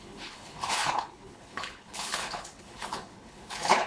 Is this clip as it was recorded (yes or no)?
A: no